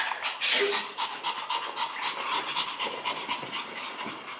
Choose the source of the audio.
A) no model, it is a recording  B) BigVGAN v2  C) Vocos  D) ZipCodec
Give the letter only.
A